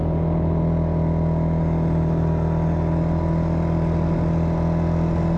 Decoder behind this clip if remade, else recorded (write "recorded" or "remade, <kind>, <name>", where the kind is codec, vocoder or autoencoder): recorded